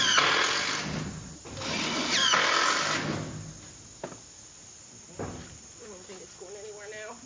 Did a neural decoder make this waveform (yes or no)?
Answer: no